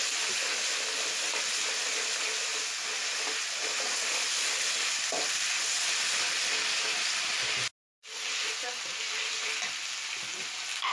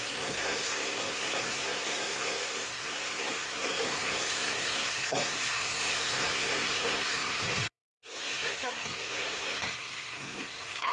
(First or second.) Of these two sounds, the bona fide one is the first